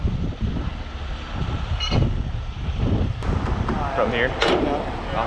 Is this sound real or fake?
real